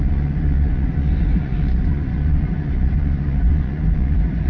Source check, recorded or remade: remade